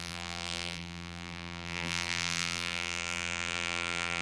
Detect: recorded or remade remade